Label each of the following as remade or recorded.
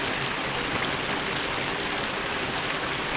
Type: recorded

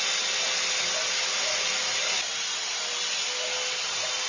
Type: recorded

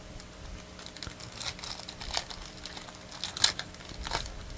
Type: recorded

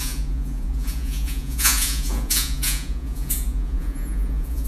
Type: remade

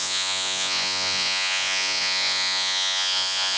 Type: remade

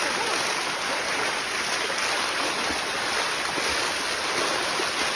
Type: recorded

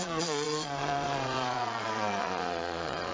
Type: remade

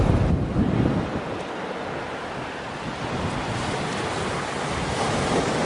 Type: recorded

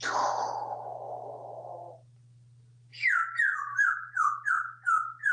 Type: recorded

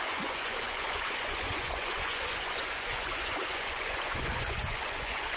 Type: remade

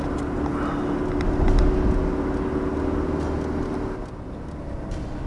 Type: recorded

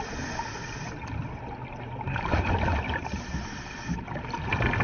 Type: recorded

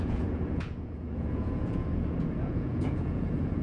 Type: remade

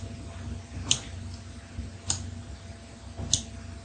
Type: recorded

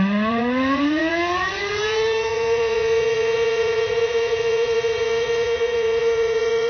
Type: remade